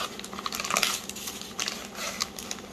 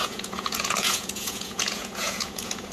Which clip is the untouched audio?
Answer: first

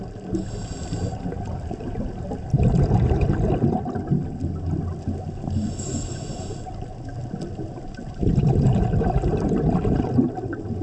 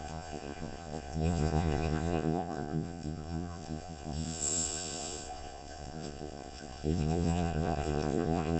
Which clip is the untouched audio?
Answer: first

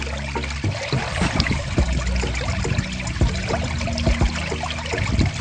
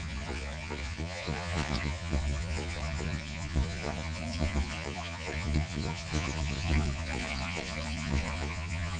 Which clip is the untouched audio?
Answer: first